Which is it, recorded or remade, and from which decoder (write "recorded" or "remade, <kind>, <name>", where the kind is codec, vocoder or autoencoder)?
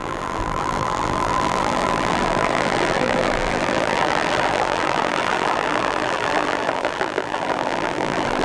remade, vocoder, BigVGAN v2